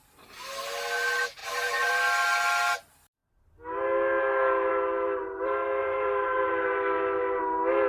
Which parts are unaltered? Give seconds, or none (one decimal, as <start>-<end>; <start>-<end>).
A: 0.0-1.4; 1.9-5.8; 7.4-7.9